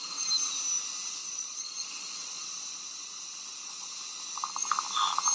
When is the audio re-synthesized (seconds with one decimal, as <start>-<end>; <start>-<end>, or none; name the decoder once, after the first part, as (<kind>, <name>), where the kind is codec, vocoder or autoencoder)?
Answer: 1.2-3.9 (vocoder, Vocos)